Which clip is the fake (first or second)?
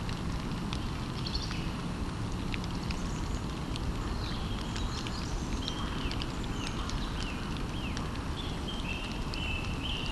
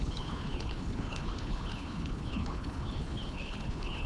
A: second